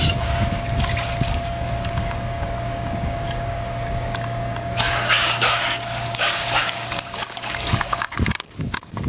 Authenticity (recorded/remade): remade